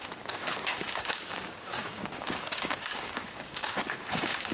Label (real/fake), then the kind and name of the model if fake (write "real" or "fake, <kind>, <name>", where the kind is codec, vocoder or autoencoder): fake, codec, DAC